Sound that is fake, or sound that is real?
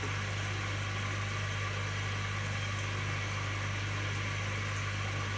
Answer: real